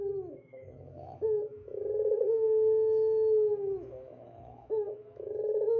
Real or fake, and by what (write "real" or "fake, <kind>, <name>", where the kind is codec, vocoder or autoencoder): fake, autoencoder, DAC-VAE